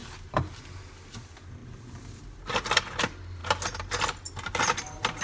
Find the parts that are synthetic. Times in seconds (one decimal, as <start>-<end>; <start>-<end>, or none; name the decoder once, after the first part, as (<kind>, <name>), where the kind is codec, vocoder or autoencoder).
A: none